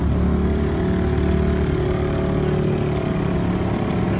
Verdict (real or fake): real